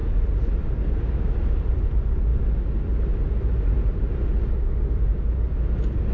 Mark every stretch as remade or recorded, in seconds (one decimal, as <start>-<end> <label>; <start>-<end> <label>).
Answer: 0.0-6.1 recorded